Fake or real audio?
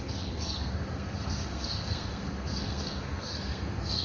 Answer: fake